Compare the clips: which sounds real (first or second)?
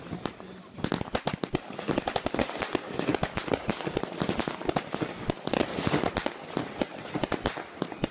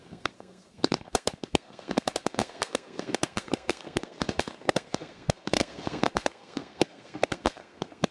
first